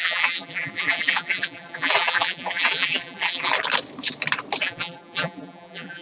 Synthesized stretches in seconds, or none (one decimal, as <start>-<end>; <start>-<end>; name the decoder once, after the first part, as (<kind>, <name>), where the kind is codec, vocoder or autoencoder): 0.0-3.5 (vocoder, BigVGAN v2); 4.6-6.0